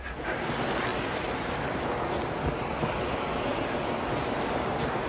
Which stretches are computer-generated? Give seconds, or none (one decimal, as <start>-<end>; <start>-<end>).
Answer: none